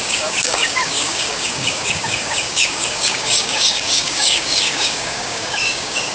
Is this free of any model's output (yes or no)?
no